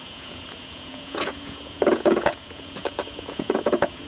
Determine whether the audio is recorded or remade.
remade